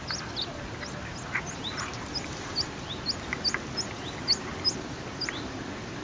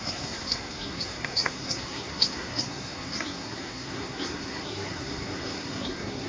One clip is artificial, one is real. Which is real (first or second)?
first